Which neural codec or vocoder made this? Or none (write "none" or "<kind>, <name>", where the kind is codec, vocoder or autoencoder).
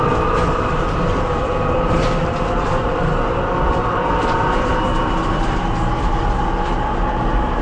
vocoder, BigVGAN v2